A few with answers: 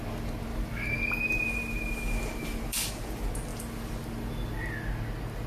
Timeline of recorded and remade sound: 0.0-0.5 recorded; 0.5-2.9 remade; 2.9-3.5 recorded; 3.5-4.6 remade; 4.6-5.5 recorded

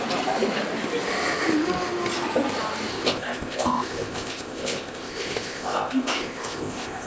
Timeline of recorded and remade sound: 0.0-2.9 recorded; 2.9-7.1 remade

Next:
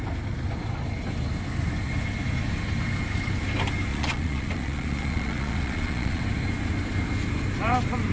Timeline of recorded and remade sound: 0.0-3.9 recorded; 3.9-6.2 remade; 6.2-8.1 recorded

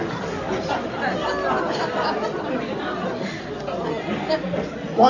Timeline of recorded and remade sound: 0.0-5.1 recorded

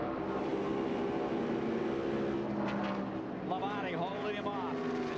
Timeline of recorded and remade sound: 0.0-5.2 recorded

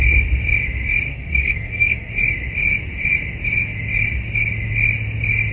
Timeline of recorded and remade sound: 0.0-1.1 recorded; 1.1-2.1 remade; 2.1-5.5 recorded

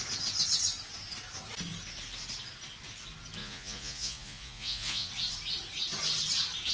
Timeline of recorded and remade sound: 0.0-3.4 recorded; 3.4-5.1 remade; 5.1-6.7 recorded

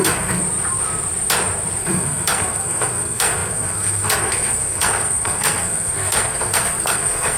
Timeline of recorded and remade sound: 0.0-0.4 remade; 0.4-1.8 recorded; 1.8-7.4 remade